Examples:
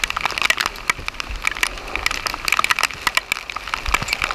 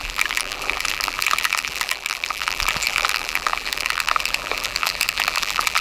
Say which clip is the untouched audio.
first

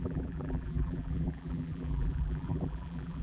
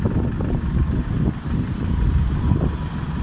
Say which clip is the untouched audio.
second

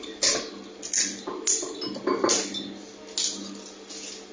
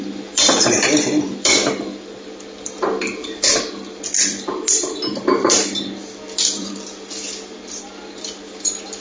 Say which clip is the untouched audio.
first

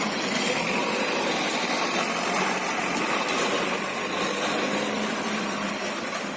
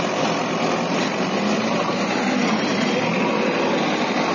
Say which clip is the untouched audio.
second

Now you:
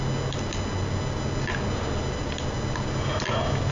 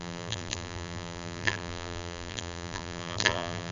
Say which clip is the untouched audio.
first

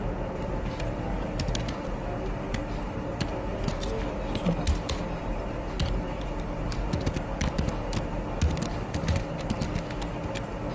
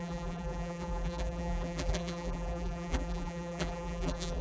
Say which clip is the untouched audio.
first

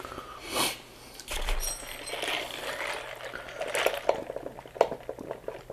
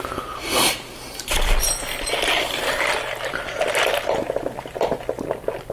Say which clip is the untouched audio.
first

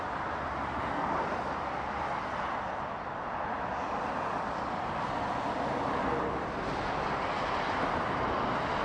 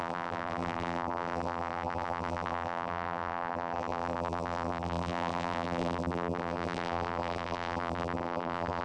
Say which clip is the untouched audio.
first